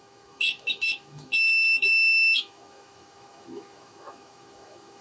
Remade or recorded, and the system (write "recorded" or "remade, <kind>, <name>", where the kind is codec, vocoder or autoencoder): remade, autoencoder, DAC-VAE